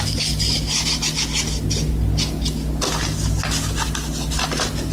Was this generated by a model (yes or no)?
no